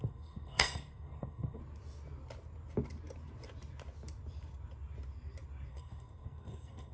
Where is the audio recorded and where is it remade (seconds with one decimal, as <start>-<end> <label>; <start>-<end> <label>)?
0.0-1.6 remade; 1.6-5.7 recorded; 5.7-6.9 remade